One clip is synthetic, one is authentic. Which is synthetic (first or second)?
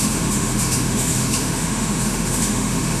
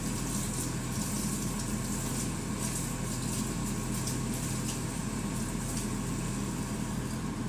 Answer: first